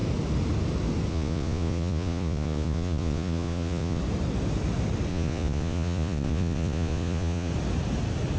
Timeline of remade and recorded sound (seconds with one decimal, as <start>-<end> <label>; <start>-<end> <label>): 0.0-1.1 recorded; 1.1-4.0 remade; 4.0-5.1 recorded; 5.1-7.5 remade; 7.5-8.4 recorded